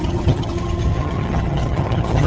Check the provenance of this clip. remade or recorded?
remade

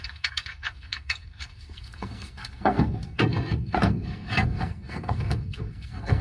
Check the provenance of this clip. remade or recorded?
remade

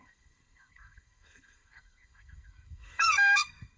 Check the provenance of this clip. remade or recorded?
remade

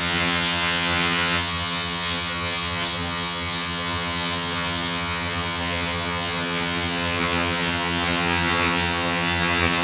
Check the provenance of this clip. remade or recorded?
remade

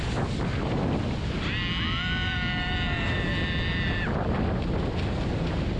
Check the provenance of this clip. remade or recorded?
recorded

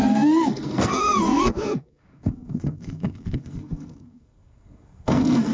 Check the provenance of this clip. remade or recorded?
remade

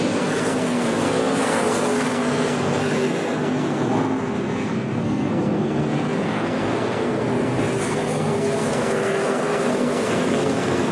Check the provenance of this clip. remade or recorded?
remade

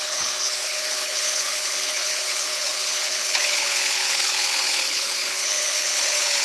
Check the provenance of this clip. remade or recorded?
remade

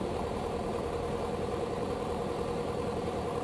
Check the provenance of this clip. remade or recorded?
recorded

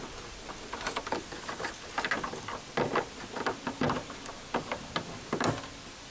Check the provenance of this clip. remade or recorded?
recorded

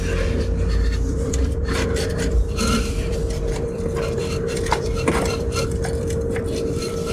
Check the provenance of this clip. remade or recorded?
remade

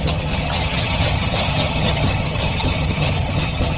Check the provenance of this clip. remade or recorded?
remade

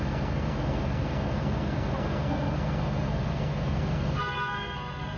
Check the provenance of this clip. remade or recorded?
remade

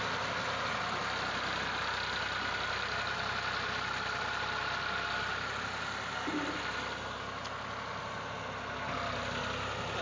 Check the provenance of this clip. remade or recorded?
recorded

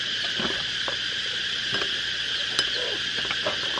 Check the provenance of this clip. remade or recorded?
recorded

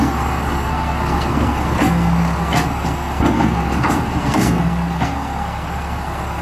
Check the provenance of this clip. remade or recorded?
remade